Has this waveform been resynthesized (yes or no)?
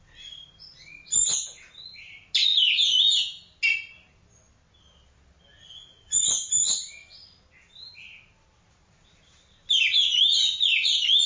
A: no